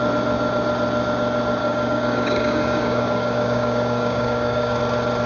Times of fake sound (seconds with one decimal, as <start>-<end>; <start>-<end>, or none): 1.6-4.8